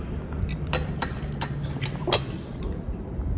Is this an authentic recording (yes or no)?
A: no